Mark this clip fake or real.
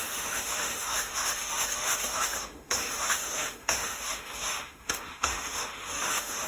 fake